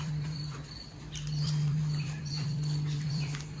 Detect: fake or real fake